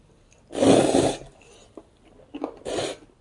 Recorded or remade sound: remade